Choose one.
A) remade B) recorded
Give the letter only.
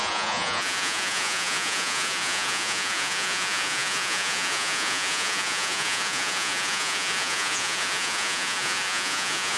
A